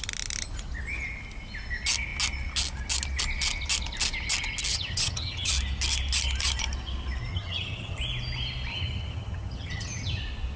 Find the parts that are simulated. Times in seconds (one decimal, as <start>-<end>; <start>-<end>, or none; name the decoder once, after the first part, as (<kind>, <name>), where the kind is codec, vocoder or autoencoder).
4.7-5.5 (vocoder, HiFi-GAN); 7.3-8.0; 8.7-10.2